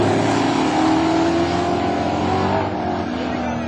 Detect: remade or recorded recorded